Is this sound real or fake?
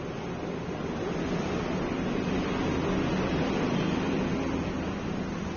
real